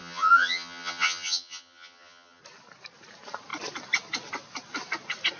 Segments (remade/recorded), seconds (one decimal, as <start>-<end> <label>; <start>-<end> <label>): 0.0-2.4 remade; 2.4-5.4 recorded